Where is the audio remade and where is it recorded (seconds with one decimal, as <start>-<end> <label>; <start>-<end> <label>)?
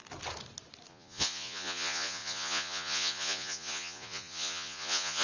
0.0-0.9 recorded; 0.9-5.2 remade